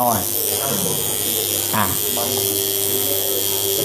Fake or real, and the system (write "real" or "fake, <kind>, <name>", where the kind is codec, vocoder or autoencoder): real